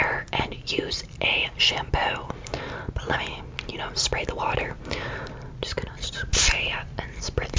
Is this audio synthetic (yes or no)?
no